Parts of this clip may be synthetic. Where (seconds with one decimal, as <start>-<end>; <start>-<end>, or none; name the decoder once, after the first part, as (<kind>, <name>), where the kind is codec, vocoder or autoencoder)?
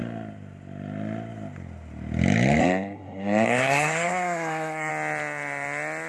2.6-4.9 (codec, SNAC)